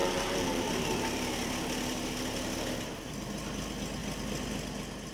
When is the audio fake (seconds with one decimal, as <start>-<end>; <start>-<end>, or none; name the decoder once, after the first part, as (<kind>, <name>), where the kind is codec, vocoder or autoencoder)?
0.0-1.5 (vocoder, BigVGAN v2)